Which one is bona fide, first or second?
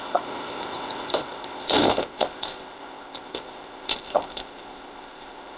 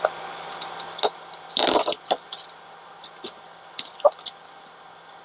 second